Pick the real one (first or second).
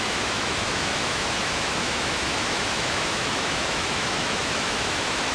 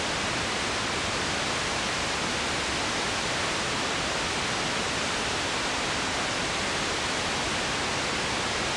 second